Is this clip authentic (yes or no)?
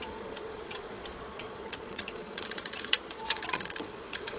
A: no